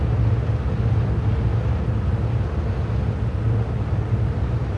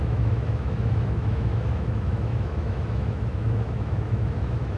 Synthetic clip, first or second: second